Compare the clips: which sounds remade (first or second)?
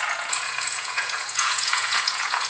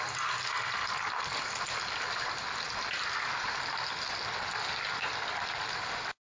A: first